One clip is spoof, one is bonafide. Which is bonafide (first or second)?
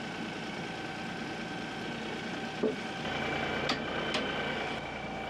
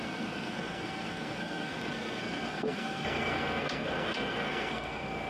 first